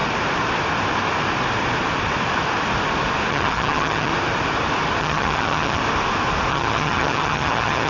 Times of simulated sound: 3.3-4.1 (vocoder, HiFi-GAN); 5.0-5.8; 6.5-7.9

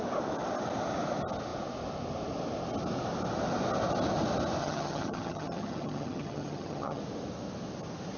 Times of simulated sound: 4.6-7.0 (vocoder, HiFi-GAN)

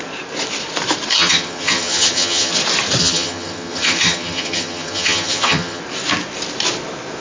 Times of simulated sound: 1.1-2.5 (vocoder, HiFi-GAN); 3.0-5.8

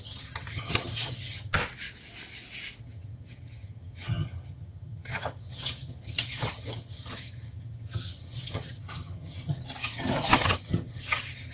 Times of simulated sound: 0.0-1.6 (vocoder, HiFi-GAN); 2.8-11.5

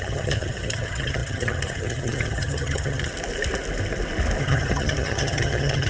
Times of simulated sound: 0.0-3.1 (vocoder, HiFi-GAN); 4.4-5.9